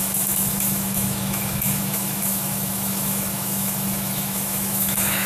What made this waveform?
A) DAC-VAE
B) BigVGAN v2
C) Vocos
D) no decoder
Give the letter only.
A